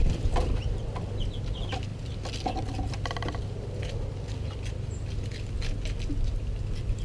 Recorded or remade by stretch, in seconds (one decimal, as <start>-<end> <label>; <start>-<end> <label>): 0.0-7.0 recorded